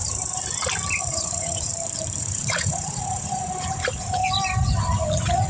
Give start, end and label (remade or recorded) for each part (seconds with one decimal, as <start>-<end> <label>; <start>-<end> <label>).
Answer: 0.0-1.0 recorded; 1.0-1.7 remade; 1.7-2.2 recorded; 2.2-4.2 remade; 4.2-4.8 recorded; 4.8-5.5 remade